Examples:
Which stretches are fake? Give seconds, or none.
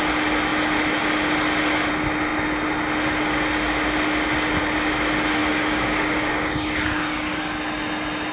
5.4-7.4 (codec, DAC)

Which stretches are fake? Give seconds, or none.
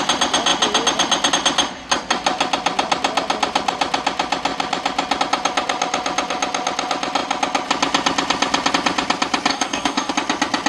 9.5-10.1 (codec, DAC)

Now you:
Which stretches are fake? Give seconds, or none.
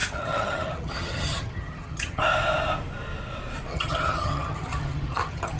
0.0-2.2 (vocoder, HiFi-GAN); 3.7-5.6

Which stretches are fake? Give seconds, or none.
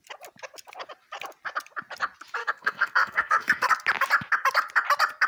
2.4-3.7 (codec, SNAC)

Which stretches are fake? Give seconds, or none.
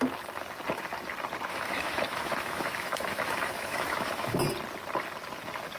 1.5-4.4 (autoencoder, DAC-VAE)